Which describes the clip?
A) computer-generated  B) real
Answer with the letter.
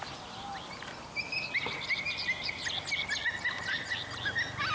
B